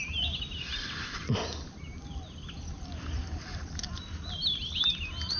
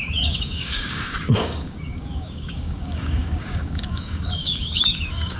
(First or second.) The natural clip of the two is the first